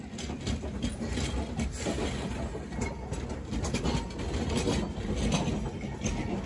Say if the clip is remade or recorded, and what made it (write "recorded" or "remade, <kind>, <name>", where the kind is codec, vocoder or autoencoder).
recorded